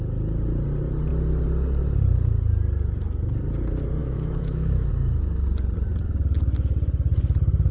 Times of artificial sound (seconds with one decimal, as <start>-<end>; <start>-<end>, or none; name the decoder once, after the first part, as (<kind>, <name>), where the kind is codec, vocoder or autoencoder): 4.0-4.9 (autoencoder, DAC-VAE)